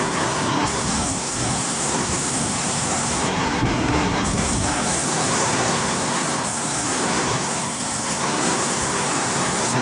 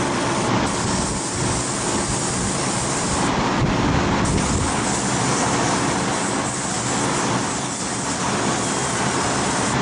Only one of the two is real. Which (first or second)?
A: second